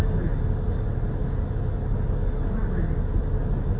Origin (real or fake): real